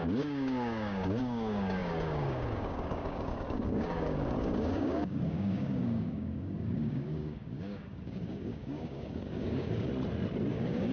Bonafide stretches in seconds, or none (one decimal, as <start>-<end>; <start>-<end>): 9.9-10.5